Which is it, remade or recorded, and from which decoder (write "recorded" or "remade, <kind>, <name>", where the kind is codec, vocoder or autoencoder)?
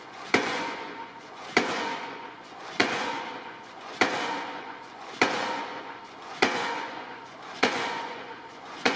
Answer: remade, vocoder, Vocos